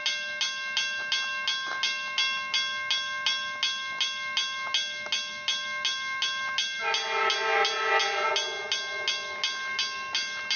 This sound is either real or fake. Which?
real